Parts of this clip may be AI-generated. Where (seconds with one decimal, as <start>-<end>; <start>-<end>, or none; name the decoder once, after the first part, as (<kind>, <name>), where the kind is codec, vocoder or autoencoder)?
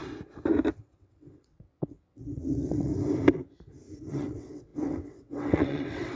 0.8-2.9 (vocoder, WaveNeXt); 4.0-6.2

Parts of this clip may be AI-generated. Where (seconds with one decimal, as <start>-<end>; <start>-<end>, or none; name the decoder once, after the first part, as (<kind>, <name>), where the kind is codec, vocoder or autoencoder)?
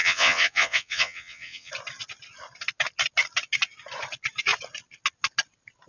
0.0-1.7 (vocoder, WaveNeXt)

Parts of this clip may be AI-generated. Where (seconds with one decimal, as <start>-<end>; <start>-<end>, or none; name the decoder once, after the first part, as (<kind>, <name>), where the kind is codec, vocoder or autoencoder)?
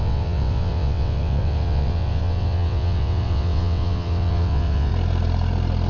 0.0-4.9 (vocoder, WaveNeXt)